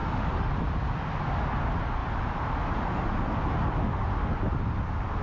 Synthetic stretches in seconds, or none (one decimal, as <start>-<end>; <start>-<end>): 0.0-0.5; 3.8-4.3